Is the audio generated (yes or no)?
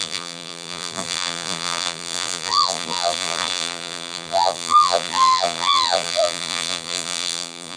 yes